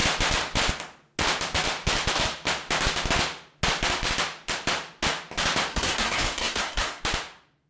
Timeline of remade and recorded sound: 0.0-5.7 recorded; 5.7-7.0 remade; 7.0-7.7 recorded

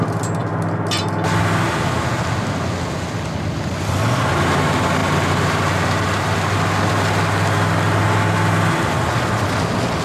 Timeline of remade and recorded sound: 0.0-10.0 recorded